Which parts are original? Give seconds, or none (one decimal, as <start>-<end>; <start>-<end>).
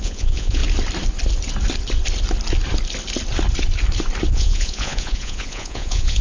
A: 0.6-4.3